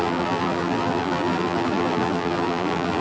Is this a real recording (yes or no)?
no